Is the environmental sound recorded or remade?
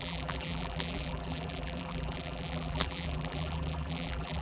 remade